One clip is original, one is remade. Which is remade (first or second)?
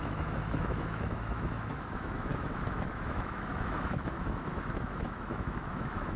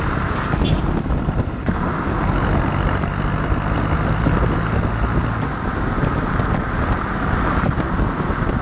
first